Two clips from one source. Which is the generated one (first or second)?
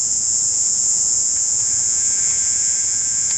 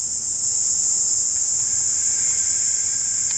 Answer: first